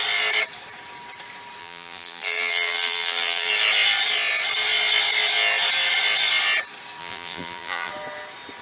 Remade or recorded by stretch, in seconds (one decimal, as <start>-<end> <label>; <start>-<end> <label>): 0.0-1.6 recorded; 1.6-3.5 remade; 3.5-7.0 recorded; 7.0-7.9 remade; 7.9-8.6 recorded